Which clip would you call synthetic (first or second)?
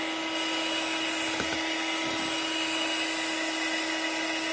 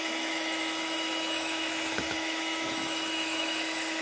second